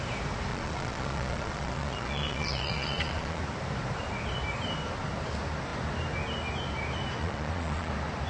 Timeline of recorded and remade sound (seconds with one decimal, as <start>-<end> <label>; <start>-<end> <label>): 0.0-0.5 recorded; 0.5-3.4 remade; 3.4-7.2 recorded; 7.2-7.9 remade; 7.9-8.3 recorded